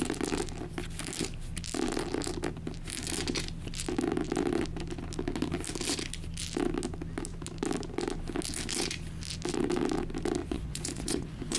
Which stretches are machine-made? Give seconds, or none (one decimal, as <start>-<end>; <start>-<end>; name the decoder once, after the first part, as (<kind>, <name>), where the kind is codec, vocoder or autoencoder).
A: 10.4-11.6 (vocoder, Vocos)